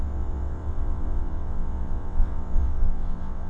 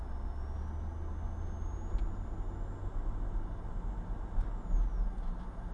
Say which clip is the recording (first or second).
second